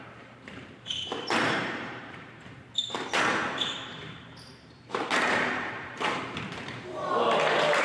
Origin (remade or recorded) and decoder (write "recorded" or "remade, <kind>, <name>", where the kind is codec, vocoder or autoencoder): remade, vocoder, BigVGAN v2